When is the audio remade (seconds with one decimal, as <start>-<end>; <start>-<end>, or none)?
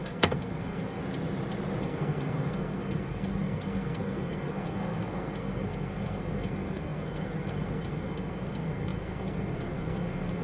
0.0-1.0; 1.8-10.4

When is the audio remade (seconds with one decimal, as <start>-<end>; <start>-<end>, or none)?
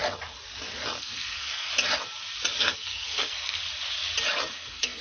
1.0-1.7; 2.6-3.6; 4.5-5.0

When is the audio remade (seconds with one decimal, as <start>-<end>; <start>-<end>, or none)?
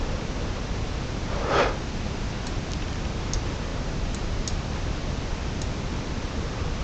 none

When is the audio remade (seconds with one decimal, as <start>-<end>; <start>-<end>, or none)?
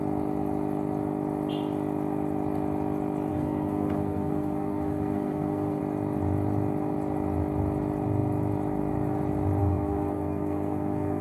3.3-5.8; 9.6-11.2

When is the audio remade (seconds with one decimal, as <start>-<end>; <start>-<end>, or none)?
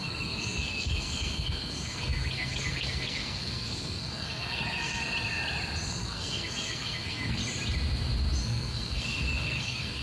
0.0-5.0; 5.9-7.4; 8.4-10.0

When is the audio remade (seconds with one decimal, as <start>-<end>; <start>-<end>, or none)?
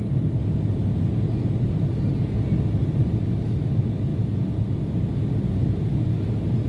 none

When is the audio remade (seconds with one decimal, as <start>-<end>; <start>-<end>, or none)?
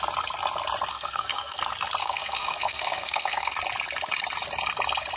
0.9-1.6; 2.0-3.5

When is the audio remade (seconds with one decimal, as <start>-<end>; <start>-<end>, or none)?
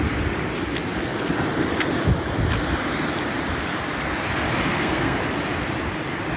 4.7-5.2